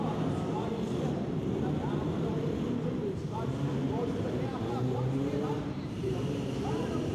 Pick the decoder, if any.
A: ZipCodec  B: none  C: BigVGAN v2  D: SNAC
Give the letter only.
C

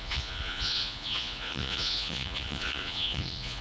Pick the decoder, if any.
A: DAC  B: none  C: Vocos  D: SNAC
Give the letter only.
C